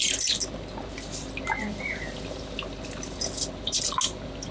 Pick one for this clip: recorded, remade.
recorded